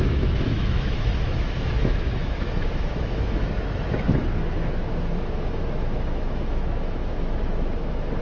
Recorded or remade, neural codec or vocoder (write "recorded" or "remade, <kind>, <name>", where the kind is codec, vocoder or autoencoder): remade, autoencoder, DAC-VAE